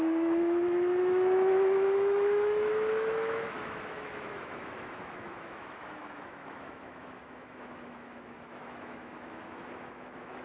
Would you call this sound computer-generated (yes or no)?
yes